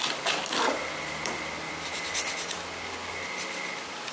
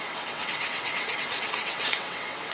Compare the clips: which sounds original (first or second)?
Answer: first